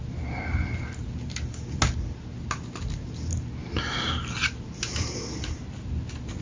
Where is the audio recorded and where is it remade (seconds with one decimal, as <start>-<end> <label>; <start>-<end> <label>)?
0.0-6.4 recorded